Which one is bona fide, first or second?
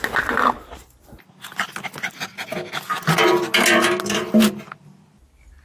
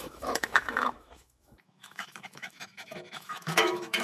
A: first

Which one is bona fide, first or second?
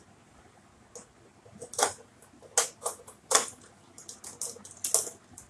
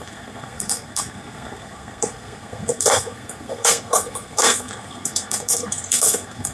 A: first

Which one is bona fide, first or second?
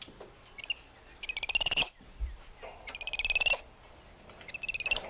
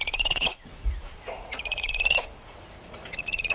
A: first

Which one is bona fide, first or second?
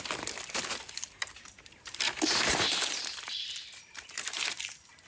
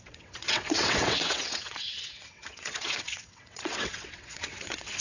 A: first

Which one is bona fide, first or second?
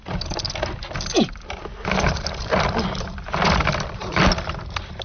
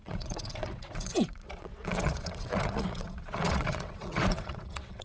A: first